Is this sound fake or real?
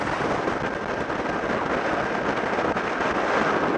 real